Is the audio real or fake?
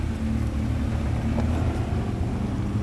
real